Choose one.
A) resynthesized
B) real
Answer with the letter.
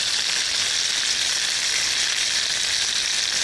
B